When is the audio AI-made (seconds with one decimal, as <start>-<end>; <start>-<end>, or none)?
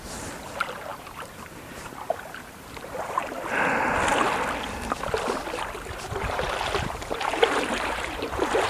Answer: 0.0-3.2; 5.9-8.7